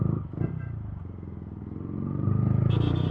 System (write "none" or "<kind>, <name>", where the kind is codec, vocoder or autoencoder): none